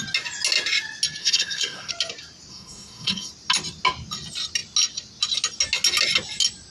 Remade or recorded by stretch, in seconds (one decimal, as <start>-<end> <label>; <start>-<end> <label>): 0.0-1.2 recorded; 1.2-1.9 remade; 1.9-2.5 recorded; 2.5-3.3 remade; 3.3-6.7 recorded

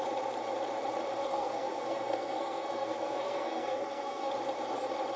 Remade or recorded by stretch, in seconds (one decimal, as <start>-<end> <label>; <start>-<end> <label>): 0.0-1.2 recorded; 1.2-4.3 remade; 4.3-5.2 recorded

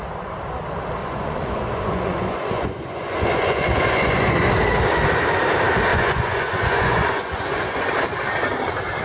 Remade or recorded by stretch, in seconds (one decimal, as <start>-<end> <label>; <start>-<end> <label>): 0.0-1.0 recorded; 1.0-4.5 remade; 4.5-5.9 recorded; 5.9-7.8 remade; 7.8-9.0 recorded